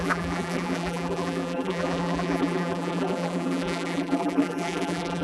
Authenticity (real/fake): fake